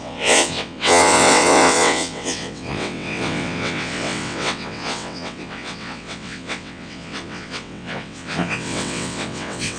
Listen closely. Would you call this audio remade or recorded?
remade